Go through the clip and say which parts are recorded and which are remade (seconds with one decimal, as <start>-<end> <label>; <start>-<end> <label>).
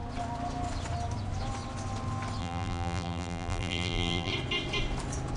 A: 0.0-2.4 recorded; 2.4-4.3 remade; 4.3-5.4 recorded